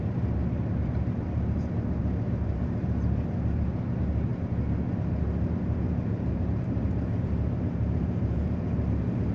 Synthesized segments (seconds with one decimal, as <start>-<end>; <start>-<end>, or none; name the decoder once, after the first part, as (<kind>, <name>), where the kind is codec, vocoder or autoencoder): 0.0-4.3 (vocoder, BigVGAN v2); 5.0-9.3